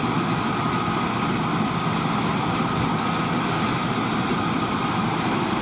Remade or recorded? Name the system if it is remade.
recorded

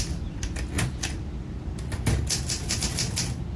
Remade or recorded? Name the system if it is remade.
recorded